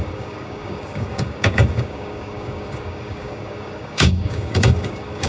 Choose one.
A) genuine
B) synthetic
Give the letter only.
B